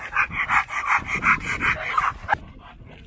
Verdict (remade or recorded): recorded